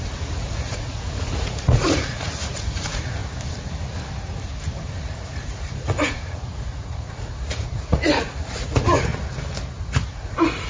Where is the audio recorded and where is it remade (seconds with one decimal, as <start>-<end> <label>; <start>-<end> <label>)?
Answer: 0.0-3.2 remade; 3.2-5.0 recorded; 5.0-9.1 remade; 9.1-9.8 recorded; 9.8-10.7 remade